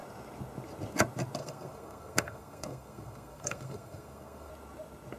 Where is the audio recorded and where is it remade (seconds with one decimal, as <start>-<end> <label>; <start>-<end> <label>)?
0.0-1.4 recorded; 1.4-4.5 remade; 4.5-5.2 recorded